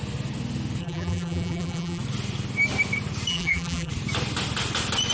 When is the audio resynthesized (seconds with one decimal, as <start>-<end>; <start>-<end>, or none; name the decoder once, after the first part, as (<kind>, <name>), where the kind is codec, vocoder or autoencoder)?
0.8-2.0 (vocoder, BigVGAN v2); 3.3-3.9